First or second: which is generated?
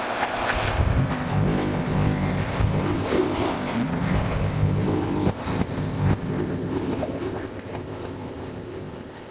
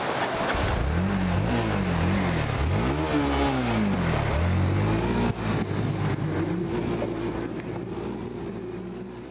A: first